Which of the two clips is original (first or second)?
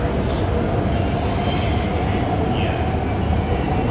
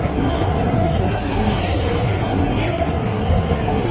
first